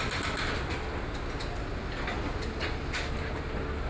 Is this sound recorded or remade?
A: recorded